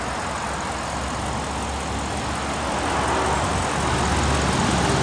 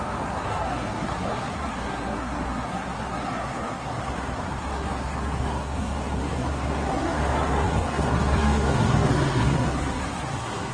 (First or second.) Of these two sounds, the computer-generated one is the second